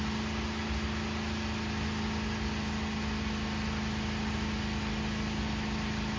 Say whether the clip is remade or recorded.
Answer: recorded